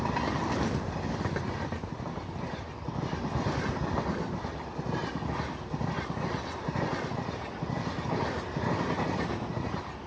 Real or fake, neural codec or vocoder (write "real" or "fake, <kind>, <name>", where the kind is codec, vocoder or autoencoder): real